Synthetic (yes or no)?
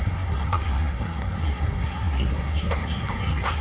yes